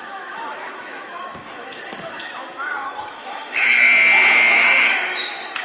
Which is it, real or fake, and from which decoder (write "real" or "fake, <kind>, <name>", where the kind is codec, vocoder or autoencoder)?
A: fake, autoencoder, DAC-VAE